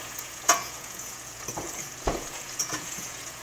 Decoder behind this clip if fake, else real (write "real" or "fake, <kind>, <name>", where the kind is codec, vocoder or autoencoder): fake, vocoder, Vocos